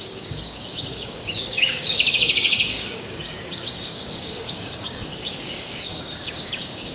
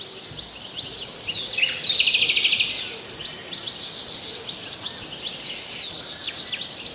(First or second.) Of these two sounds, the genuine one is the second